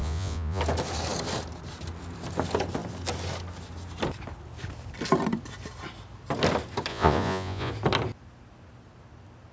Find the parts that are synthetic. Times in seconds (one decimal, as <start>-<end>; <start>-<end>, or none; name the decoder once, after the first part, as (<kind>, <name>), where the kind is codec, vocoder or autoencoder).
0.0-0.6 (vocoder, Vocos); 6.9-7.7